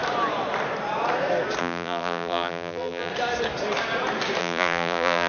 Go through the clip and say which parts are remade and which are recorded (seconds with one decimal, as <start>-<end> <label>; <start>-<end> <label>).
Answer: 0.0-1.6 recorded; 1.6-3.1 remade; 3.1-4.4 recorded; 4.4-5.3 remade

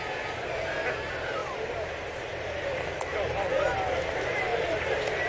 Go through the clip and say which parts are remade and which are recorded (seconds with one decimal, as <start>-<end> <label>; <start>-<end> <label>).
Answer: 0.0-0.7 remade; 0.7-1.4 recorded; 1.4-4.0 remade; 4.0-4.5 recorded; 4.5-5.3 remade

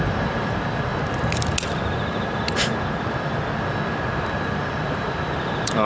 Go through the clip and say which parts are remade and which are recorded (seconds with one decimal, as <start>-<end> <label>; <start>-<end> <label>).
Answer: 0.0-0.9 remade; 0.9-4.4 recorded; 4.4-5.8 remade